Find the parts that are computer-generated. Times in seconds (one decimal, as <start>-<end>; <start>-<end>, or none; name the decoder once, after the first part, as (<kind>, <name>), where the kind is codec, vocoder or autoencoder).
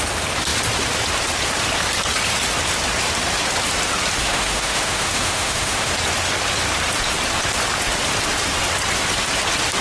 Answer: 4.2-5.9 (autoencoder, DAC-VAE)